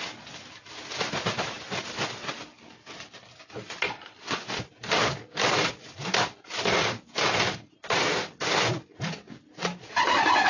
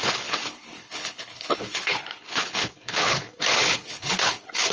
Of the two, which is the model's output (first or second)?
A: second